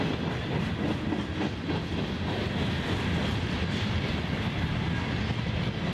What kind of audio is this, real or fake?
real